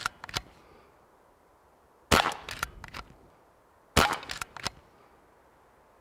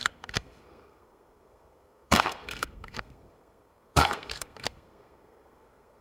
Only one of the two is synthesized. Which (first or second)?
second